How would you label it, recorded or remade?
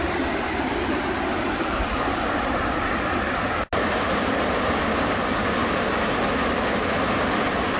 recorded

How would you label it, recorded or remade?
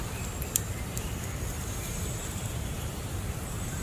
remade